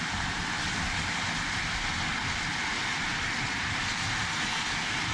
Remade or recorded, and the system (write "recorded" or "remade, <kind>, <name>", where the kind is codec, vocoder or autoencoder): recorded